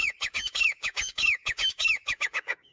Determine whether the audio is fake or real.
fake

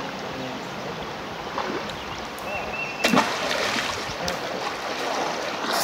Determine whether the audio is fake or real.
real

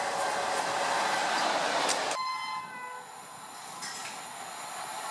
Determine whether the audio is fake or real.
real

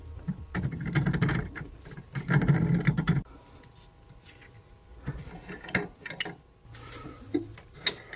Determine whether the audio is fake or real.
real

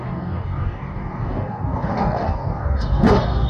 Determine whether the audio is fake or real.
fake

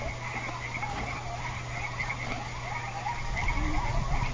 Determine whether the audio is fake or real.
real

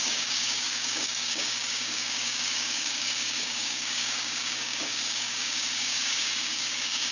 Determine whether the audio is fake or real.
fake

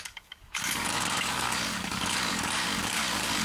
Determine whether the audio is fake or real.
fake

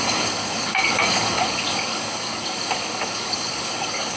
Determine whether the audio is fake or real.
fake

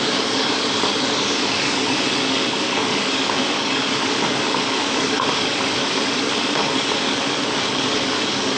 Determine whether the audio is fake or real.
fake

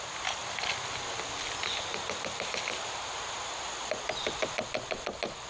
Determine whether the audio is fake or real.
real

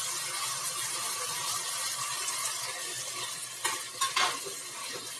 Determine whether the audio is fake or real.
real